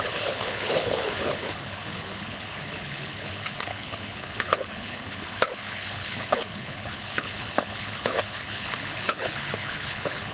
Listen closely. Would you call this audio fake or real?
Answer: fake